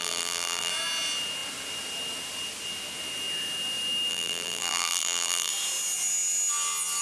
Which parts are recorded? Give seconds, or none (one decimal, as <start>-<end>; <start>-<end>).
0.7-4.1; 5.5-7.0